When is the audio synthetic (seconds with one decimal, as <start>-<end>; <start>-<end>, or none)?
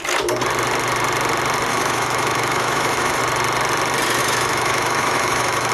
1.7-3.2; 4.2-5.7